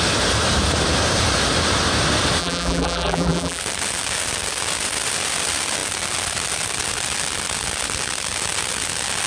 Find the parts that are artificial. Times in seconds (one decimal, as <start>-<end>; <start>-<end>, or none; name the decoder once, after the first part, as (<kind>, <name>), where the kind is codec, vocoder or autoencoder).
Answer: 2.4-3.6 (vocoder, BigVGAN v2)